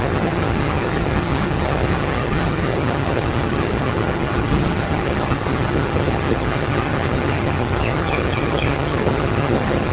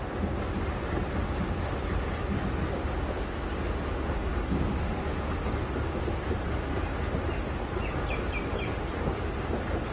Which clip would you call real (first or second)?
second